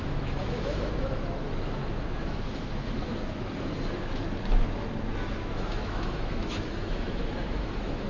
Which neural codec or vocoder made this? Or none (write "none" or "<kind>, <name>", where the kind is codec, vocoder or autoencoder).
autoencoder, DAC-VAE